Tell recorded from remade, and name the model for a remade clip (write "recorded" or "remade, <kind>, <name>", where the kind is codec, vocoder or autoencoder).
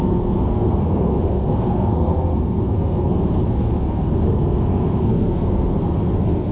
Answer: remade, codec, SNAC